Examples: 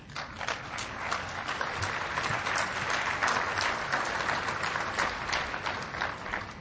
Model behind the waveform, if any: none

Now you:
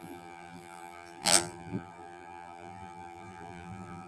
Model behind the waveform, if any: vocoder, BigVGAN v2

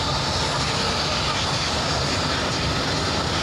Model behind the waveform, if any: none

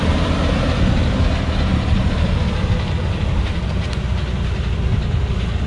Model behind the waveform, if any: none